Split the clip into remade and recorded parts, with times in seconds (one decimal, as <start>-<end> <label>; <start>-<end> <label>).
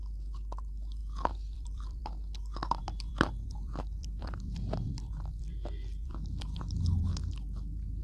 0.0-1.0 recorded; 1.0-2.0 remade; 2.0-2.8 recorded; 2.8-6.6 remade; 6.6-8.0 recorded